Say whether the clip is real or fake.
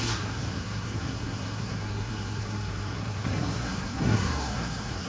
fake